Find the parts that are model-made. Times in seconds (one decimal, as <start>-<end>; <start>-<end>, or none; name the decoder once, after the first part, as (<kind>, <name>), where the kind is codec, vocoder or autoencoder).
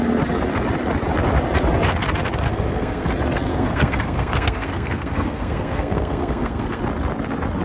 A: 2.5-3.1 (codec, SNAC); 3.5-6.8